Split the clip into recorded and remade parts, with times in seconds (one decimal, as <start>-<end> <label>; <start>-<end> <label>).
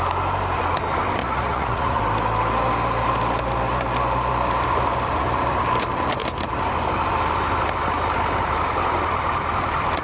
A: 0.0-1.2 recorded; 1.2-2.0 remade; 2.0-10.0 recorded